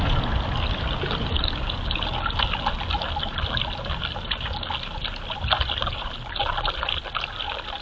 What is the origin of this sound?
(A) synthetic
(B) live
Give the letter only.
B